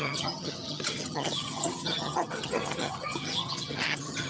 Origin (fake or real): fake